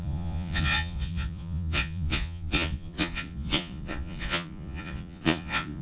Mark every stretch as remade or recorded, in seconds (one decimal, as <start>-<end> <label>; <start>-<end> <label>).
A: 0.0-5.8 remade